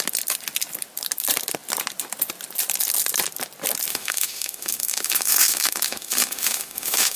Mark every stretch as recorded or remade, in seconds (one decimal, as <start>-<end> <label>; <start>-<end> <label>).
0.0-3.9 recorded; 3.9-7.2 remade